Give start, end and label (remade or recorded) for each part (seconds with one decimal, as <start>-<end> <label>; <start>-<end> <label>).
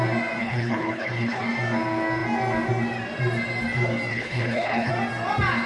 0.0-0.4 recorded; 0.4-1.4 remade; 1.4-4.1 recorded; 4.1-4.9 remade; 4.9-5.7 recorded